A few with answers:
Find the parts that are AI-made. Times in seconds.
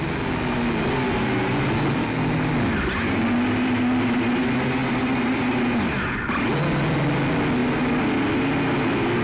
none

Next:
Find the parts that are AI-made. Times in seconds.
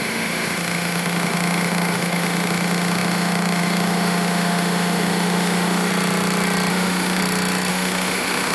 0.0-5.9 (autoencoder, DAC-VAE); 6.7-7.2; 7.7-8.5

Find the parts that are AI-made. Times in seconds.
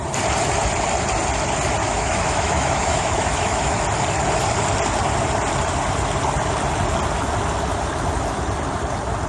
1.8-3.8 (autoencoder, DAC-VAE)